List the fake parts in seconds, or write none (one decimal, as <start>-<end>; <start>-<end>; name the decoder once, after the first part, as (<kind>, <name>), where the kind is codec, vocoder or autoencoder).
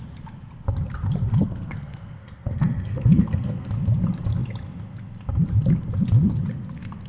1.3-3.7 (codec, SNAC)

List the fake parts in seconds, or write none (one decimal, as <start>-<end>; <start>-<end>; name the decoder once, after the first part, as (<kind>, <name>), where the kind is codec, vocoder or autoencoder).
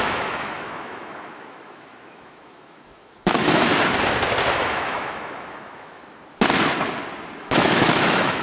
0.0-3.7 (autoencoder, DAC-VAE); 4.5-6.0; 7.4-8.4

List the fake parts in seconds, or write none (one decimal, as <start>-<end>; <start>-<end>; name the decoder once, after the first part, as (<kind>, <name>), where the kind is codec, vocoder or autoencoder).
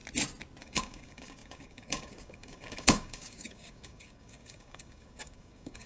0.6-5.9 (codec, DAC)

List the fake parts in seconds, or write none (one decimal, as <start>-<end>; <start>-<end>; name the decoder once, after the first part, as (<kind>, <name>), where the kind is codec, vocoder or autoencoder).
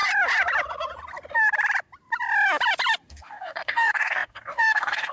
3.1-5.1 (codec, DAC)